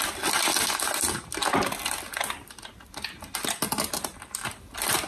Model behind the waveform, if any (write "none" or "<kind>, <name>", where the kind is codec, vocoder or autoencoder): none